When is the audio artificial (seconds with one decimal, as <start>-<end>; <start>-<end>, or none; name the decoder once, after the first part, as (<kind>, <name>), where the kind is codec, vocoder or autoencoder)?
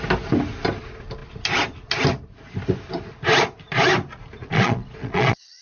4.4-5.6 (vocoder, Vocos)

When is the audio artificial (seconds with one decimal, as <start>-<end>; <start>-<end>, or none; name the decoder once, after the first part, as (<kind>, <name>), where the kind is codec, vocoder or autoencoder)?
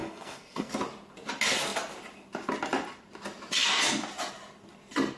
0.0-0.7 (codec, SNAC)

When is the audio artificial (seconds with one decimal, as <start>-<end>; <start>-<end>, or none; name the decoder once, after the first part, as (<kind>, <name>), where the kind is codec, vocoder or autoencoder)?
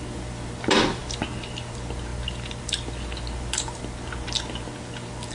none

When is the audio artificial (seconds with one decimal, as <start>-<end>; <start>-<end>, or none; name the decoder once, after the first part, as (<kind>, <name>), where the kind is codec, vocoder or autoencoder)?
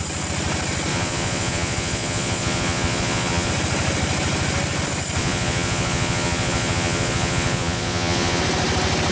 0.9-3.5 (vocoder, Vocos); 5.2-8.4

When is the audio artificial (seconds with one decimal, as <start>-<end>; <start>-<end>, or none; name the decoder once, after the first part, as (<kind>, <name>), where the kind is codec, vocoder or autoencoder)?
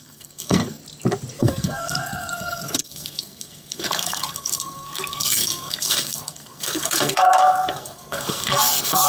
0.0-0.8 (codec, SNAC); 1.4-9.1